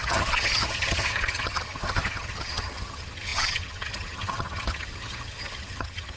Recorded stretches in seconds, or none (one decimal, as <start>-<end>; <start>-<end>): none